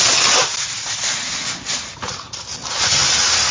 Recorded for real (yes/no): yes